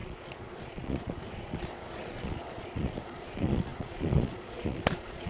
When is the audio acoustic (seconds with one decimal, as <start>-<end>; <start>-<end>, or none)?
none